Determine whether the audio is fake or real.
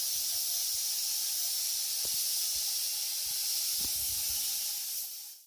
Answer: real